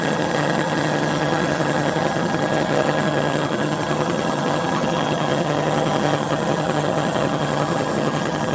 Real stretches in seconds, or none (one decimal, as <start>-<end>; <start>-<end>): none